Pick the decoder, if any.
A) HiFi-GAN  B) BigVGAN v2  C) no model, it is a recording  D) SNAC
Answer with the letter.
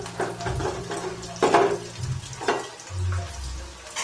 C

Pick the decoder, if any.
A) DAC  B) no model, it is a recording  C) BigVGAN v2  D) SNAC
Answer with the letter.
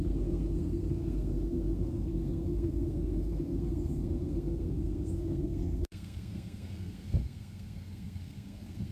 D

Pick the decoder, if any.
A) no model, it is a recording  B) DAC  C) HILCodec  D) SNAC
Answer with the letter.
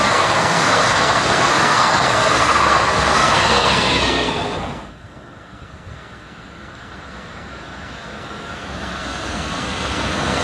D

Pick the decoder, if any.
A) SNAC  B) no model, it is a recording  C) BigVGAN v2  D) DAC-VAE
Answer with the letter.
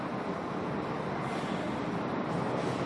B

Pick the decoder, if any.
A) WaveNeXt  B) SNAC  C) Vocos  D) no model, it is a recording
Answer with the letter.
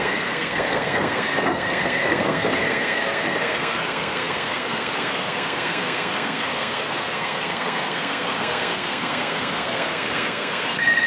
B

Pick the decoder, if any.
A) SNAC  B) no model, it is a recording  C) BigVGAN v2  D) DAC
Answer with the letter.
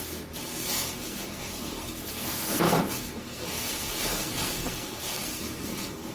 A